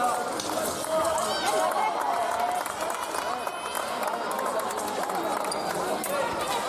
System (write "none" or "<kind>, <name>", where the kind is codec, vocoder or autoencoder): none